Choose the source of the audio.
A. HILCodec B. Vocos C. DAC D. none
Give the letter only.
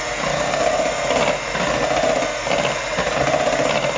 D